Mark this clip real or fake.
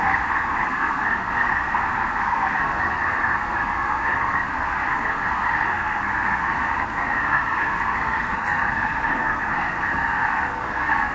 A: fake